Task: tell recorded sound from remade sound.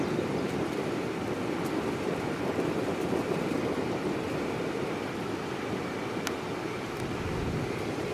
recorded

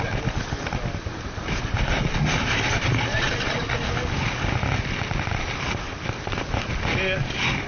recorded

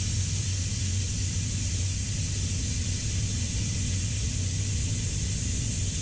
recorded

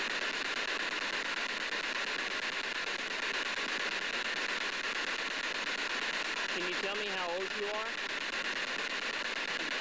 recorded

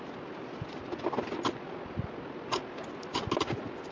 recorded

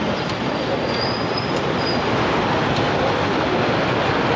recorded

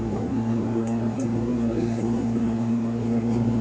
remade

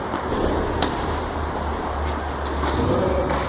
recorded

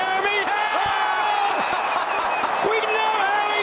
recorded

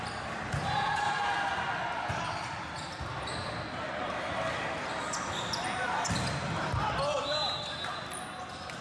recorded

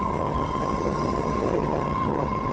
remade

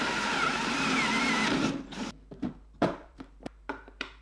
remade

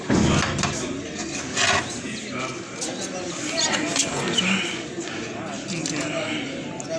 recorded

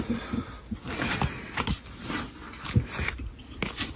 recorded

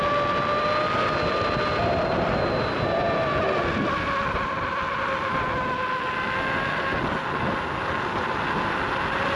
recorded